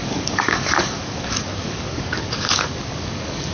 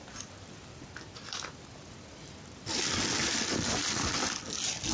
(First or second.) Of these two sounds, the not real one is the first